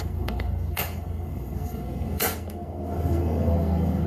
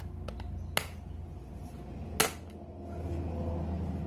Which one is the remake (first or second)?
first